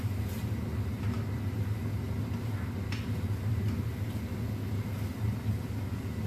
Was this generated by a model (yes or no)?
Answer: no